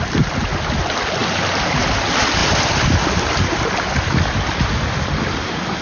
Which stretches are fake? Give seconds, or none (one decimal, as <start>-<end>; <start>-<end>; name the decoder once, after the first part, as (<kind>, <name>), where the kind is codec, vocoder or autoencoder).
1.2-1.8 (vocoder, BigVGAN v2)